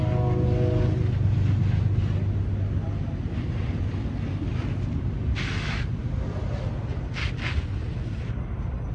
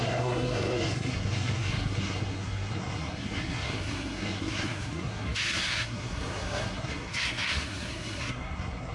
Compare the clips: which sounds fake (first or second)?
second